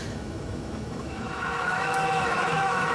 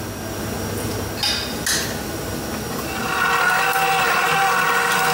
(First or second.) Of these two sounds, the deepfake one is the first